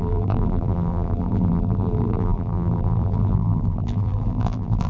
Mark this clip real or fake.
fake